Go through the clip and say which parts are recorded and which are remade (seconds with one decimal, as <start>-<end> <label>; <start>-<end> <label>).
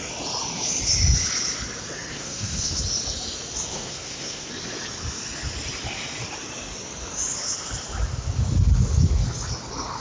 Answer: 0.0-2.1 recorded; 2.1-2.8 remade; 2.8-3.7 recorded; 3.7-4.5 remade; 4.5-10.0 recorded